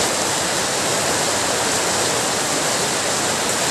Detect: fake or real real